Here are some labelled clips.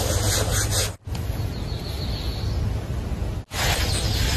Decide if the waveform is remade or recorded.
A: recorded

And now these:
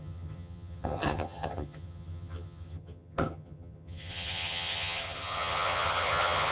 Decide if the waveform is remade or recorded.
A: remade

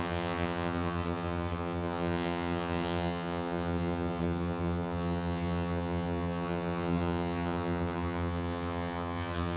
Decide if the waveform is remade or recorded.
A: remade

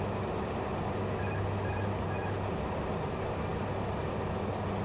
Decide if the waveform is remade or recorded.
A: recorded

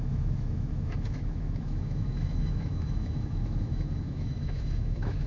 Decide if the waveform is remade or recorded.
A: remade